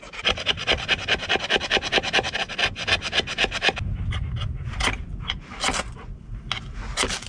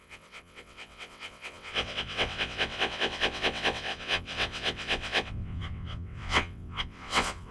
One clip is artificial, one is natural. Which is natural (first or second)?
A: first